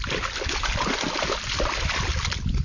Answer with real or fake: real